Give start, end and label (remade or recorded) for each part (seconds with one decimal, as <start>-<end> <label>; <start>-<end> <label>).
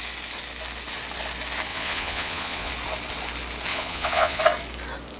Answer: 0.0-1.7 recorded; 1.7-2.7 remade; 2.7-3.7 recorded; 3.7-4.4 remade; 4.4-5.2 recorded